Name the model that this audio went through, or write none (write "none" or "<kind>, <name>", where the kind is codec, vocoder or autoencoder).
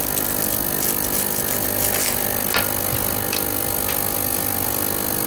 none